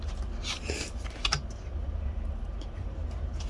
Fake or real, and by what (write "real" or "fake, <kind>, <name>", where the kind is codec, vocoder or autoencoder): fake, vocoder, BigVGAN v2